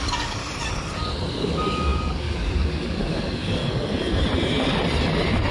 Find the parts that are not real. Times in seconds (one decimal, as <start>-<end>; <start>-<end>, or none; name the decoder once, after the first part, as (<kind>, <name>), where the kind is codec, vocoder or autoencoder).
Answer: 0.0-0.4 (codec, DAC); 1.3-3.6